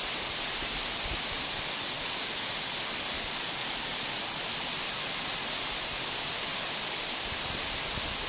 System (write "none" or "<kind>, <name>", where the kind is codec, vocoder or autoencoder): none